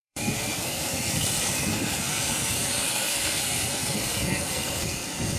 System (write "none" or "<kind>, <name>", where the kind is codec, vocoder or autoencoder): codec, SNAC